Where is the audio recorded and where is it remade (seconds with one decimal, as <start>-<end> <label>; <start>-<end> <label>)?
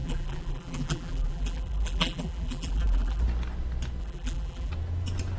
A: 0.0-3.2 remade; 3.2-4.0 recorded; 4.0-4.7 remade; 4.7-5.4 recorded